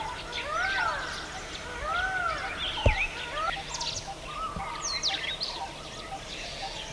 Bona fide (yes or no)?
yes